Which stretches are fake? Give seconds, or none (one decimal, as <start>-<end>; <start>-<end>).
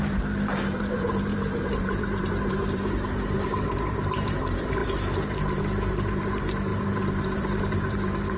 0.0-8.4